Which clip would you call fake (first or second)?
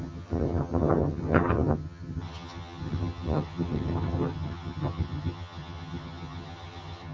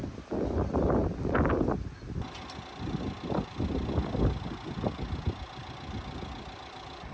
first